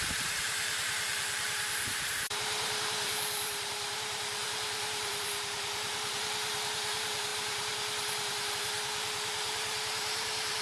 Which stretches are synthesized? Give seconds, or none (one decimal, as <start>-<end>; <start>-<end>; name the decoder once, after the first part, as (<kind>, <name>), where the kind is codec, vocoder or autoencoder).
0.0-10.6 (vocoder, BigVGAN v2)